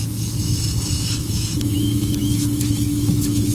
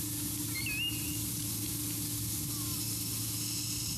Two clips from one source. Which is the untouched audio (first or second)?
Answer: second